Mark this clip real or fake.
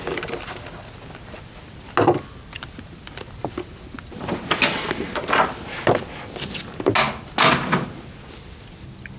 real